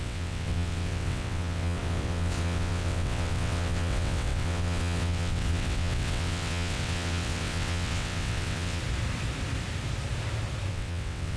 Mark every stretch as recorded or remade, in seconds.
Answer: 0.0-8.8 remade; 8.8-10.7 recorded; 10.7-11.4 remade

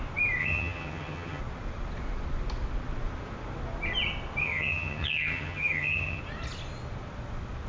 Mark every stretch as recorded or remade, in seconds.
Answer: 0.0-0.4 recorded; 0.4-1.4 remade; 1.4-4.4 recorded; 4.4-6.2 remade; 6.2-7.7 recorded

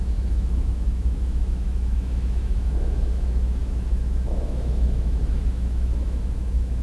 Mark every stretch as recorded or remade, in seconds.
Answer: 0.0-6.8 remade

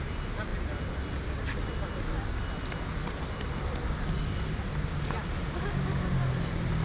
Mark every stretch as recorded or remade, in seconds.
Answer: 0.0-6.8 recorded

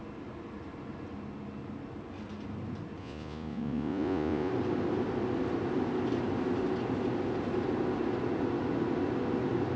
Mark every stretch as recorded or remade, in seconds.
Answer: 0.0-3.0 recorded; 3.0-4.5 remade; 4.5-9.8 recorded